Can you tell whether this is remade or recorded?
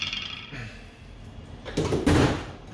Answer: recorded